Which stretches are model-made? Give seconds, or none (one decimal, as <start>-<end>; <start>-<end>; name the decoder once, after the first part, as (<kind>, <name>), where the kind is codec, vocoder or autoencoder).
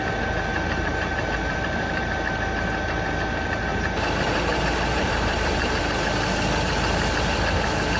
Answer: 0.5-2.1 (vocoder, BigVGAN v2); 3.7-5.8